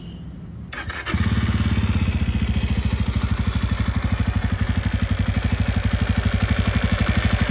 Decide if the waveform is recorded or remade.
recorded